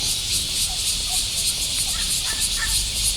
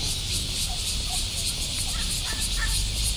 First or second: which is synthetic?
first